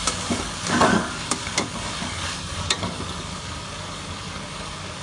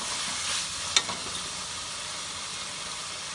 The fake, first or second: first